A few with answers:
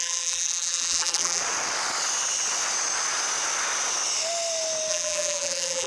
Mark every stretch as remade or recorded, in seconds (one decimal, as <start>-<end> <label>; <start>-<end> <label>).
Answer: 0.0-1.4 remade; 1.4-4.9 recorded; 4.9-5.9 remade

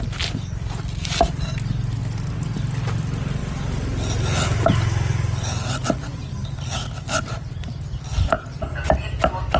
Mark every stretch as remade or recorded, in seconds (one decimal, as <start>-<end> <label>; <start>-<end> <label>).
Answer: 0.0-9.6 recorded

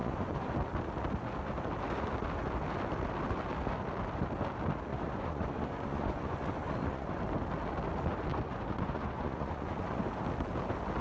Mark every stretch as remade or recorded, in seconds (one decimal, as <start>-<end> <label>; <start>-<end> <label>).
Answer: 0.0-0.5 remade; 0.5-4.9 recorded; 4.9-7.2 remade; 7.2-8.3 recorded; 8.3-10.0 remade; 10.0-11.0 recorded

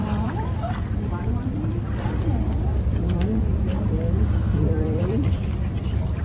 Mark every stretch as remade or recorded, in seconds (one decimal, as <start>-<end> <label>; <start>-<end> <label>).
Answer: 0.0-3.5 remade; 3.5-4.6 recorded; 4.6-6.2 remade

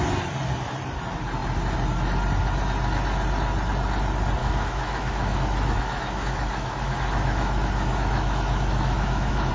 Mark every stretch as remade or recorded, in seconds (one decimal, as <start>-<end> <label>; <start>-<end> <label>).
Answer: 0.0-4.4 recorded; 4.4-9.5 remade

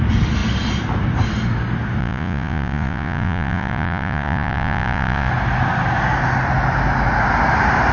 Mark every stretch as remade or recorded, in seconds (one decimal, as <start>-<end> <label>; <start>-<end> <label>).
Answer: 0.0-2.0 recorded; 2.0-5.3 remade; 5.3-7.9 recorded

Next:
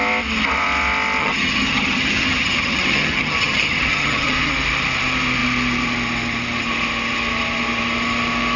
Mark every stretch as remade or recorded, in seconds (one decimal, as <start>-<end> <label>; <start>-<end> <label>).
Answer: 0.0-1.2 recorded; 1.2-4.5 remade; 4.5-8.6 recorded

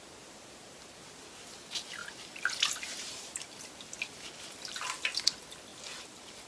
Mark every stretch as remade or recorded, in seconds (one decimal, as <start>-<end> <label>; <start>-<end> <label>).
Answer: 0.0-6.5 recorded